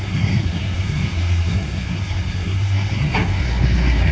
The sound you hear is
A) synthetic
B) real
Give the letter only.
A